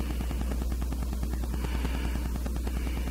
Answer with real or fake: real